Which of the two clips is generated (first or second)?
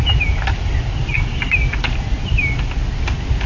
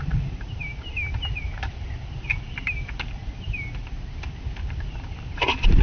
second